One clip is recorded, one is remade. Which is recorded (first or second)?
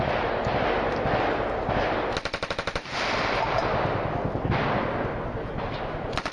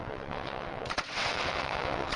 first